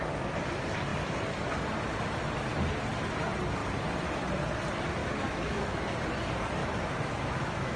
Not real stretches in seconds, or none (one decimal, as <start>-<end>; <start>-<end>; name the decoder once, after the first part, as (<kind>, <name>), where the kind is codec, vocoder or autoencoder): 5.0-5.8 (autoencoder, DAC-VAE); 6.6-7.8